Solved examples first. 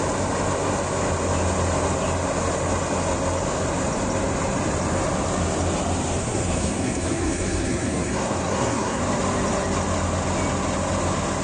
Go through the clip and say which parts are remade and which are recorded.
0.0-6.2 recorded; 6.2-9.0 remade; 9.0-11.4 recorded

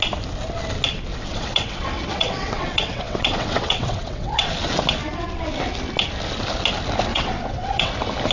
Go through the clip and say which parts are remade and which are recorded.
0.0-1.1 recorded; 1.1-4.5 remade; 4.5-7.1 recorded; 7.1-7.9 remade; 7.9-8.3 recorded